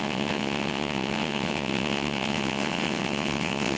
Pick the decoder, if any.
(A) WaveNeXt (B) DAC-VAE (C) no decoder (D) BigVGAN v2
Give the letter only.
A